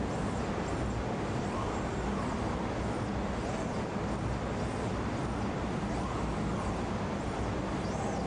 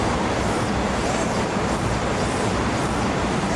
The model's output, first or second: second